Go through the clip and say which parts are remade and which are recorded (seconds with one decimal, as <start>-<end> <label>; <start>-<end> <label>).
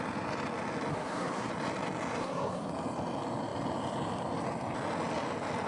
0.0-0.9 recorded; 0.9-1.5 remade; 1.5-2.2 recorded; 2.2-2.7 remade; 2.7-5.7 recorded